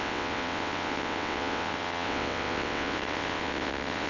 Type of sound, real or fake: fake